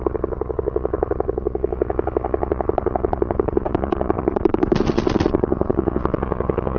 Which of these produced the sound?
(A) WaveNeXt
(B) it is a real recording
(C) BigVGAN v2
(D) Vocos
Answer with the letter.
D